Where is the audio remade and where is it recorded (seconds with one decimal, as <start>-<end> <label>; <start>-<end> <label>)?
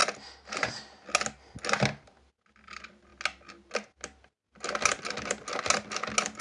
0.0-6.4 recorded